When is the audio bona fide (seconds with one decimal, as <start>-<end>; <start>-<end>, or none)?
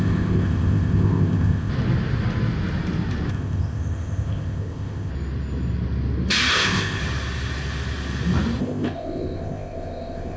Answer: 1.7-3.3; 5.1-6.5; 7.0-8.6